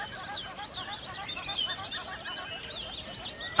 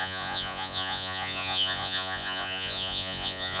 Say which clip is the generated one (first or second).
second